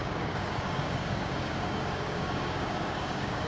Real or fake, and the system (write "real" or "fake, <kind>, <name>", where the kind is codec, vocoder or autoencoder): fake, codec, DAC